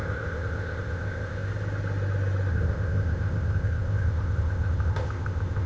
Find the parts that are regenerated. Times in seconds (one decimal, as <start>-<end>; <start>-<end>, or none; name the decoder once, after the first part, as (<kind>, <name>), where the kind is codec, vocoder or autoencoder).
0.0-1.5 (codec, ZipCodec); 2.5-5.7